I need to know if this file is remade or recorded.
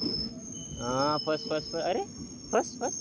recorded